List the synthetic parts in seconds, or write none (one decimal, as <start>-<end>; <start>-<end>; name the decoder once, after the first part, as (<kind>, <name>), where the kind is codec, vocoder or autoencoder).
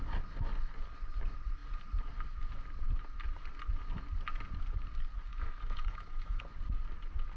5.3-6.4 (autoencoder, DAC-VAE)